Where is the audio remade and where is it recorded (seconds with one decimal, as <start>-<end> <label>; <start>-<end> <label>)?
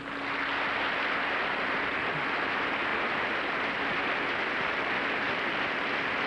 0.0-6.3 recorded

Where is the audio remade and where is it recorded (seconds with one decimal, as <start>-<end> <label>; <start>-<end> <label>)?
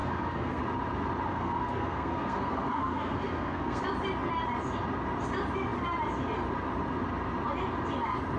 0.0-0.6 remade; 0.6-1.3 recorded; 1.3-3.8 remade; 3.8-8.4 recorded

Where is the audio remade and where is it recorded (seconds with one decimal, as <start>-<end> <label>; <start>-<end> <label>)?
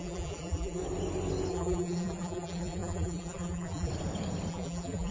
0.0-0.8 remade; 0.8-1.5 recorded; 1.5-3.9 remade; 3.9-4.5 recorded; 4.5-5.1 remade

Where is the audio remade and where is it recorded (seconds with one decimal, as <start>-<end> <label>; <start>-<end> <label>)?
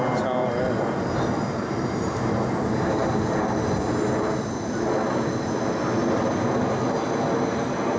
0.0-0.4 recorded; 0.4-2.4 remade; 2.4-8.0 recorded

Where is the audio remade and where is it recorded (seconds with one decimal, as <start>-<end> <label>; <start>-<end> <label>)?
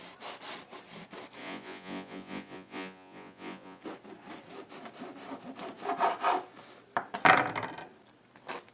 0.0-1.4 recorded; 1.4-3.8 remade; 3.8-8.7 recorded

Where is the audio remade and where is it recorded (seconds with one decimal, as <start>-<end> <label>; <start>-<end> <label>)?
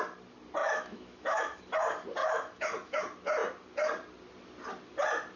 0.0-0.6 recorded; 0.6-1.6 remade; 1.6-2.2 recorded; 2.2-3.0 remade; 3.0-5.4 recorded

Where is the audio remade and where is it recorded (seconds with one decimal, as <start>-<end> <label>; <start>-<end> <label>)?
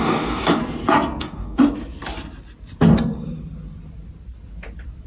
0.0-0.6 remade; 0.6-1.2 recorded; 1.2-1.6 remade; 1.6-5.1 recorded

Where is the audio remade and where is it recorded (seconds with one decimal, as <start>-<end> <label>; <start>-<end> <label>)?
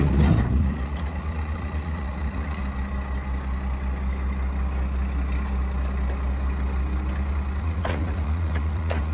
0.0-2.6 remade; 2.6-7.6 recorded; 7.6-9.1 remade